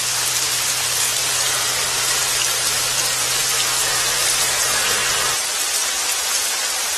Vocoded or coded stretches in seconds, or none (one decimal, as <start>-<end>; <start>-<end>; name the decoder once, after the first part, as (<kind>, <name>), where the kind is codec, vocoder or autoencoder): none